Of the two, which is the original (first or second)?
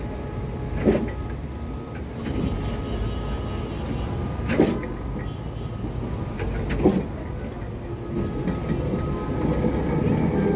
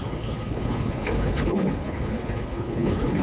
first